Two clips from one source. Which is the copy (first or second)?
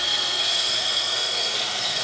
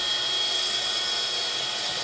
first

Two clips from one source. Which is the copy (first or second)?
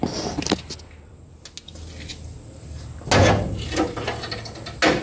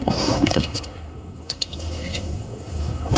second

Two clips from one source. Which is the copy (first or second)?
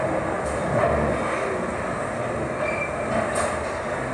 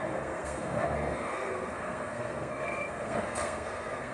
second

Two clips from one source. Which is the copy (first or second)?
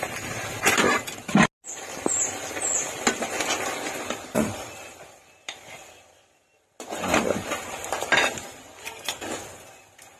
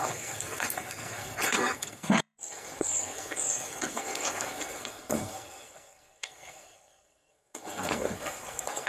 second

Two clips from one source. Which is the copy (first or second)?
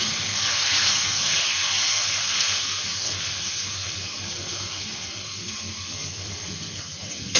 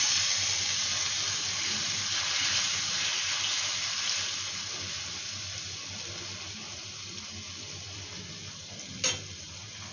first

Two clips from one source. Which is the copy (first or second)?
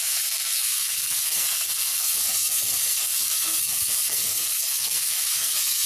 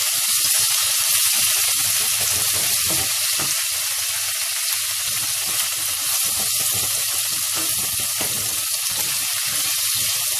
first